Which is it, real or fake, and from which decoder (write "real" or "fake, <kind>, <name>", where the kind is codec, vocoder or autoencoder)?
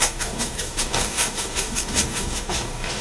fake, codec, DAC